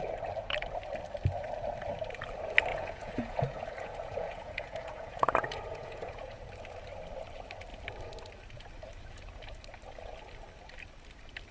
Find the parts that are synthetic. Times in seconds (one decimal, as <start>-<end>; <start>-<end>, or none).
2.7-6.4